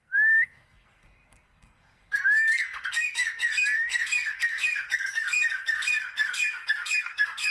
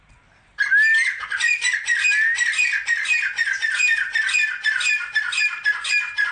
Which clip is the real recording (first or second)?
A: second